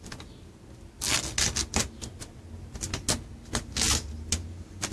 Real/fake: real